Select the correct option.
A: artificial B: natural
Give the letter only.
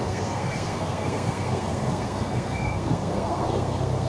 A